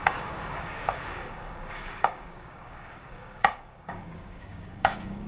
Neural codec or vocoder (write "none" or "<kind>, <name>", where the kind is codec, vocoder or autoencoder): codec, DAC